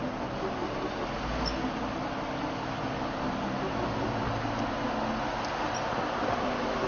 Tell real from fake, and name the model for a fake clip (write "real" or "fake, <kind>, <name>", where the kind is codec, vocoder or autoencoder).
real